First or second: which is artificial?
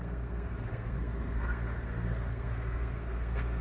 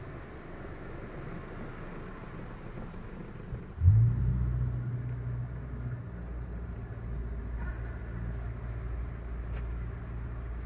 first